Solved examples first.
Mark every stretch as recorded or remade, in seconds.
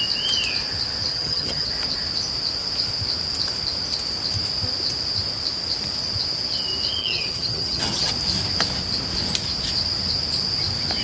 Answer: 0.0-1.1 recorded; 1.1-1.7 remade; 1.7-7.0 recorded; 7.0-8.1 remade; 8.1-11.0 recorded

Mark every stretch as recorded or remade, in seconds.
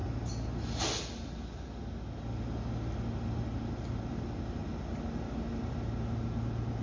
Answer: 0.0-6.8 recorded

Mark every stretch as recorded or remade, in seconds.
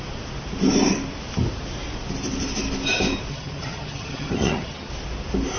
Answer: 0.0-3.3 recorded; 3.3-4.9 remade; 4.9-5.6 recorded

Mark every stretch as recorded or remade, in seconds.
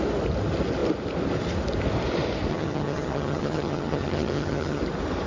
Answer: 0.0-2.5 recorded; 2.5-4.8 remade; 4.8-5.3 recorded